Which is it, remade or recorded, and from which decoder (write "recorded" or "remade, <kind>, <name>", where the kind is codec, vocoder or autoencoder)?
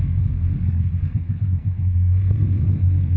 remade, codec, SNAC